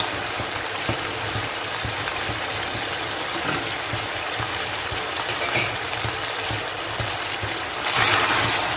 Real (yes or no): yes